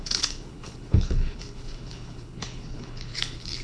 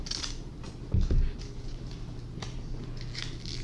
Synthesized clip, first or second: first